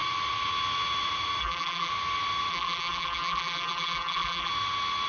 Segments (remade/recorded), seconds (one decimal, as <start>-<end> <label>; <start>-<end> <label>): 0.0-1.4 recorded; 1.4-1.9 remade; 1.9-2.5 recorded; 2.5-4.5 remade; 4.5-5.1 recorded